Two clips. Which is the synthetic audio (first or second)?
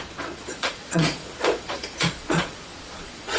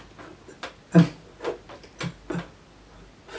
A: first